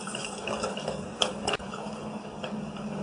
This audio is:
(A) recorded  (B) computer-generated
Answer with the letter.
B